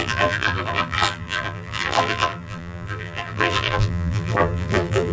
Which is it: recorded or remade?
remade